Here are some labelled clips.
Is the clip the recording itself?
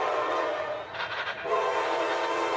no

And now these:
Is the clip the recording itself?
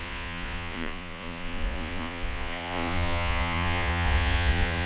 no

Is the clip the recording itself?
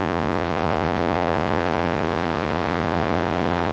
no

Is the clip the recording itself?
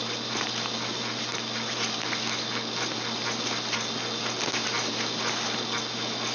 yes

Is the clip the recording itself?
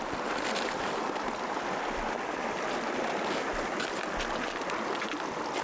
yes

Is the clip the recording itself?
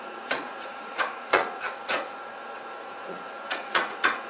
no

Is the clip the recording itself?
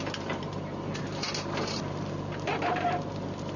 yes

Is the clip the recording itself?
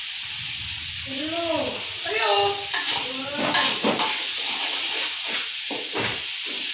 yes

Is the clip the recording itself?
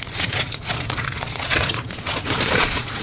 no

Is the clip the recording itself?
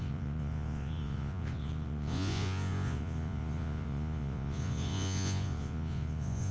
no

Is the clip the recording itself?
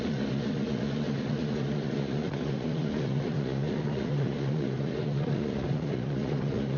no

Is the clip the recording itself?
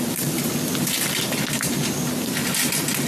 yes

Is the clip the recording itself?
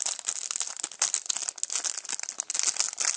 yes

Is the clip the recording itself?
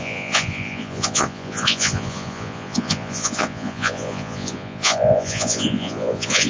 no